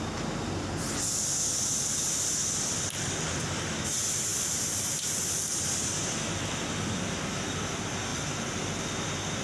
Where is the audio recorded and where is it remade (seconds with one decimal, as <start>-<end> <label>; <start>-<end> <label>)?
0.0-4.3 recorded; 4.3-5.7 remade; 5.7-8.1 recorded; 8.1-8.8 remade; 8.8-9.4 recorded